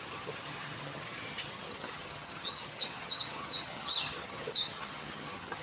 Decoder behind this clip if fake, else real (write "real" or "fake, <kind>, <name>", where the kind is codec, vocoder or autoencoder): fake, vocoder, HiFi-GAN